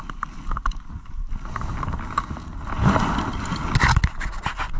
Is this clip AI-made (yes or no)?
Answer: no